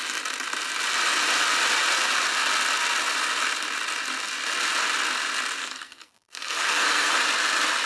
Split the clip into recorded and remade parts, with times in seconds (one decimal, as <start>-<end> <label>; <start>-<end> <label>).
0.0-5.6 recorded; 5.6-7.2 remade; 7.2-7.9 recorded